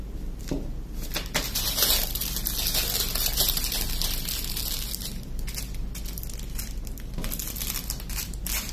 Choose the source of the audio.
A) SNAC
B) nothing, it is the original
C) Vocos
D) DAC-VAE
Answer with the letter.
B